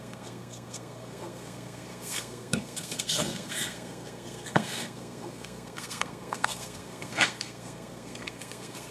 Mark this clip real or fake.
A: fake